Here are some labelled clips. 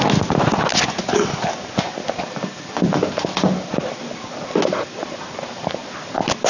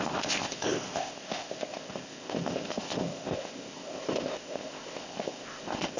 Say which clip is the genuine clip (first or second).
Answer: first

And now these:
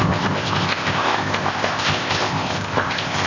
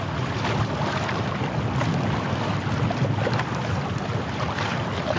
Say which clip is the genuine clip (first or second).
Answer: second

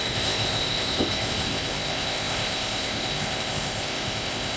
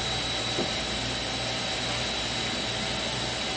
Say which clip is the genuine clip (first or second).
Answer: second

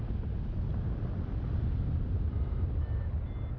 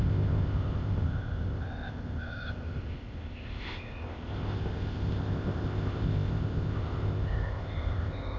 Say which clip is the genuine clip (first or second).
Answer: first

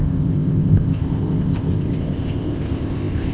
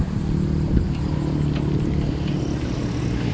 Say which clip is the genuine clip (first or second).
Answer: second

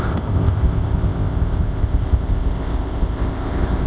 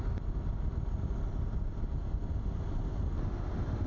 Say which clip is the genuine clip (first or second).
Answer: second